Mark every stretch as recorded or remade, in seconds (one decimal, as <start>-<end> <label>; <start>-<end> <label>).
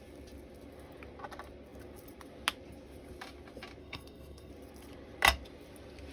0.0-3.8 recorded; 3.8-4.5 remade; 4.5-6.1 recorded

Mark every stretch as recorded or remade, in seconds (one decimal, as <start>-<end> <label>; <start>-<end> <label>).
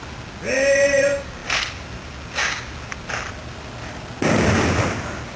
0.0-5.4 recorded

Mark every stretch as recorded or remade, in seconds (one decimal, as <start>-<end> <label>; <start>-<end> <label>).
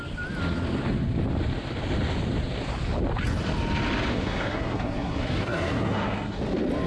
0.0-4.1 recorded; 4.1-6.4 remade; 6.4-6.9 recorded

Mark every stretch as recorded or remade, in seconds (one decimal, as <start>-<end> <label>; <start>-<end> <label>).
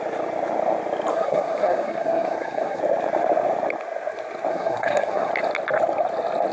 0.0-1.1 recorded; 1.1-2.8 remade; 2.8-4.5 recorded; 4.5-5.3 remade; 5.3-6.5 recorded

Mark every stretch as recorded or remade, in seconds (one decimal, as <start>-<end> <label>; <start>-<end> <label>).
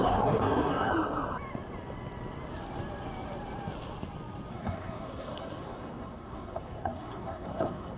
0.0-0.9 remade; 0.9-4.5 recorded; 4.5-8.0 remade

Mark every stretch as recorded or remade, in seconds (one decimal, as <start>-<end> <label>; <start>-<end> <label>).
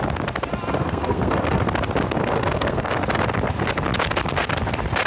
0.0-0.8 recorded; 0.8-1.6 remade; 1.6-2.2 recorded; 2.2-2.9 remade; 2.9-5.1 recorded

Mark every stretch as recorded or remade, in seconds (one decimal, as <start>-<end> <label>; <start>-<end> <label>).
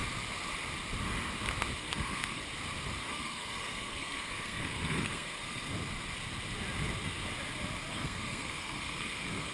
0.0-1.8 recorded; 1.8-2.4 remade; 2.4-3.0 recorded; 3.0-5.7 remade; 5.7-7.9 recorded; 7.9-9.5 remade